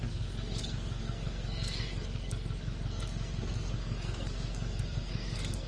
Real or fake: fake